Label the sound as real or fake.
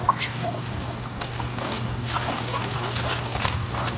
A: fake